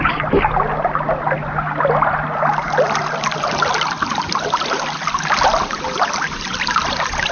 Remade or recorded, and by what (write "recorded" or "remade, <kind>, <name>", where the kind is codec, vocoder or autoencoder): recorded